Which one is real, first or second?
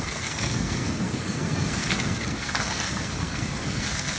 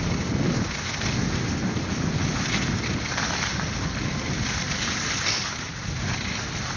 second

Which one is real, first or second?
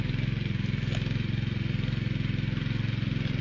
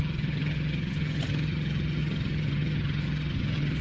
first